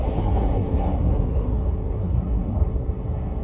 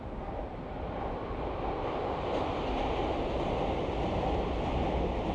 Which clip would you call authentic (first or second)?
second